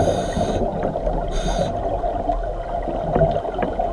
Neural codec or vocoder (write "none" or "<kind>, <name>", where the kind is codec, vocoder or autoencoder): none